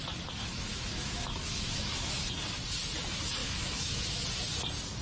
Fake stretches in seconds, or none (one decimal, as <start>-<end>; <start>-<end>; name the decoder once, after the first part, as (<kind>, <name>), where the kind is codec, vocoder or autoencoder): 0.4-2.3 (autoencoder, DAC-VAE); 3.4-4.2